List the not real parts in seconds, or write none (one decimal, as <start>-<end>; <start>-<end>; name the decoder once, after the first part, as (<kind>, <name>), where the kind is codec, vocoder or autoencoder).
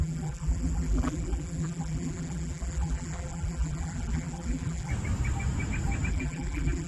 0.0-4.9 (vocoder, BigVGAN v2); 6.1-6.9